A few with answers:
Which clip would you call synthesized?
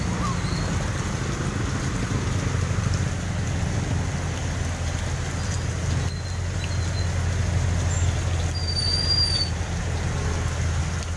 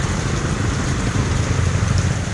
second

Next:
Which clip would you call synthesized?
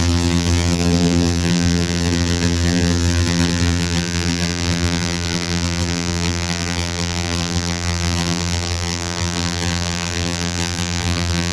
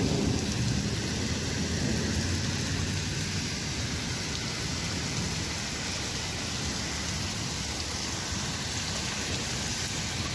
first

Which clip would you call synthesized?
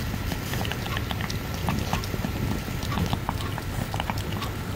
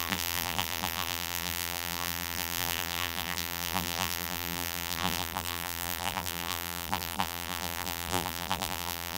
second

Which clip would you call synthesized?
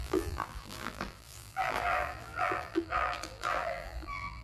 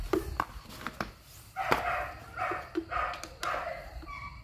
first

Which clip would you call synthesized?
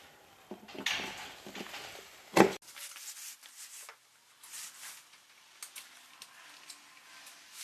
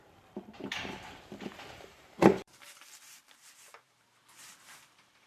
second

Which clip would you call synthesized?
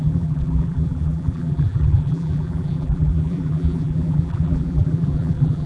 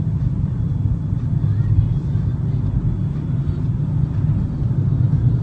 first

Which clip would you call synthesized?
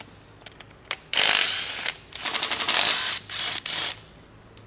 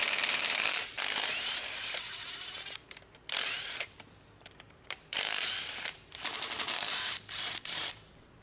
second